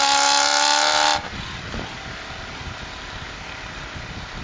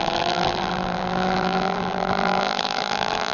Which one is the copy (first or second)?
second